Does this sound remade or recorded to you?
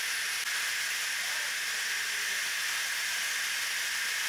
recorded